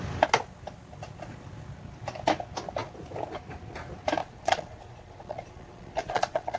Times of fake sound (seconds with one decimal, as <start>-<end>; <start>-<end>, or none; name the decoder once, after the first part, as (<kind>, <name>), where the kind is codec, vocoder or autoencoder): 4.2-6.6 (vocoder, Vocos)

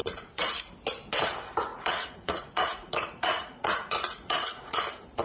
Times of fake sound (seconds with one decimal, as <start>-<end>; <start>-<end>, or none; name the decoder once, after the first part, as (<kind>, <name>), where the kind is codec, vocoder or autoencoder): 0.0-0.6 (vocoder, Vocos); 1.7-4.8

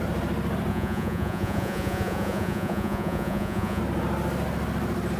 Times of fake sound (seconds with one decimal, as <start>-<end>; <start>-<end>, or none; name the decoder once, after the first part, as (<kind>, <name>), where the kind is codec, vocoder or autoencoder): 0.7-3.8 (vocoder, Vocos)

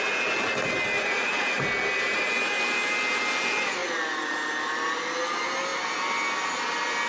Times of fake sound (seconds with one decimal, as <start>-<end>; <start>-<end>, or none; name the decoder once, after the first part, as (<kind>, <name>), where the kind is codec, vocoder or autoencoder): none